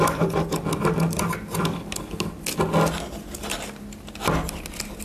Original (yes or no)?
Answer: yes